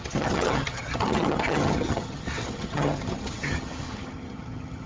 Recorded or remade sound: remade